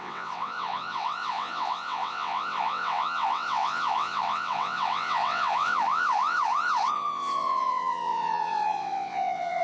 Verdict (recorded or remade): remade